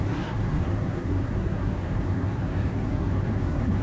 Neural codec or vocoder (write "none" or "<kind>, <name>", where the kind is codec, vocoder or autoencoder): codec, SNAC